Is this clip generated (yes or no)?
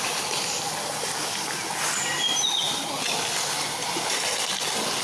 no